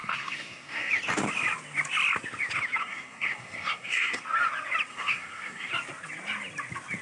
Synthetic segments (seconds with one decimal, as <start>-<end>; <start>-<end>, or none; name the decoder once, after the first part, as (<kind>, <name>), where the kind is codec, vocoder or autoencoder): 0.0-0.9 (codec, SNAC); 2.8-4.2; 4.9-5.7